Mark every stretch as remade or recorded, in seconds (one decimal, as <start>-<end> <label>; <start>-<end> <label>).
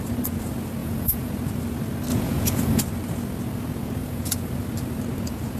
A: 0.0-0.8 recorded; 0.8-1.3 remade; 1.3-2.1 recorded; 2.1-2.8 remade; 2.8-4.0 recorded; 4.0-4.5 remade; 4.5-5.6 recorded